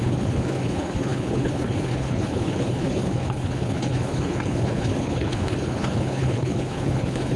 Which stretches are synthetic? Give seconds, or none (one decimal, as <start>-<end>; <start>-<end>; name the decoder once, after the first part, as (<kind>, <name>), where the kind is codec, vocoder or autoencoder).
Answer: 0.0-7.4 (codec, HILCodec)